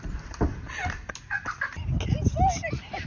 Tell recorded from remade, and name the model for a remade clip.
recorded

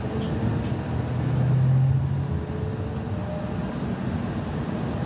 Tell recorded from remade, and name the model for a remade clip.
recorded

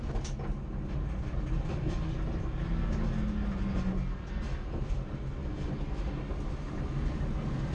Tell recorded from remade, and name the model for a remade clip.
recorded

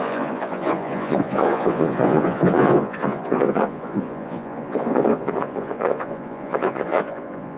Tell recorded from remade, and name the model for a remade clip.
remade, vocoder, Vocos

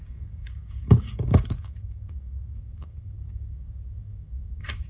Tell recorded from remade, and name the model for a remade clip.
remade, codec, DAC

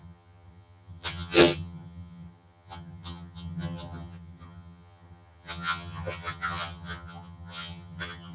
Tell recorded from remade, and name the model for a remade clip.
remade, vocoder, HiFi-GAN